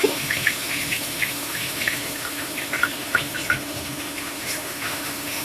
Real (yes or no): no